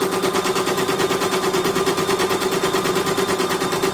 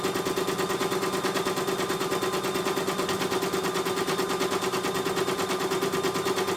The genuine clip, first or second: second